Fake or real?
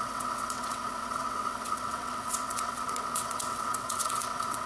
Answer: fake